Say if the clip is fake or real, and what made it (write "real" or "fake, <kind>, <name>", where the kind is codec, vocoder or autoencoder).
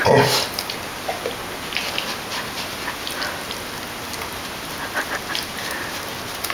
real